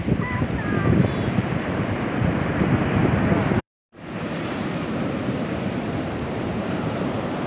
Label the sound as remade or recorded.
remade